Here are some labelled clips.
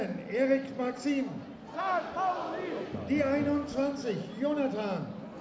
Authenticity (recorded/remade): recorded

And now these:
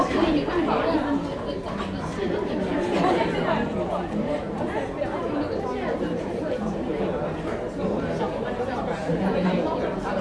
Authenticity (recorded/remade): remade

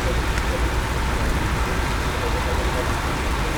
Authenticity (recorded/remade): recorded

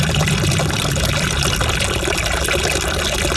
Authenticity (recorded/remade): recorded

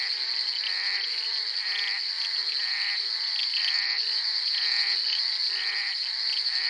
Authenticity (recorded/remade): recorded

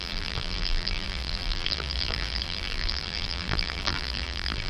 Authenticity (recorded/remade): remade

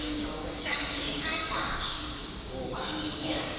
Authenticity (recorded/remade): remade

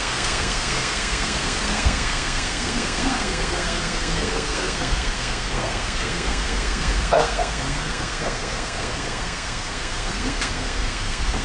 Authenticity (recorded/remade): remade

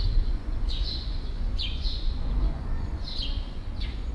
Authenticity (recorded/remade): remade